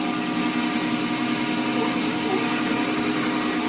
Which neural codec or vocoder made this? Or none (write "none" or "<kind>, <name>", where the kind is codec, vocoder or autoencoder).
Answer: none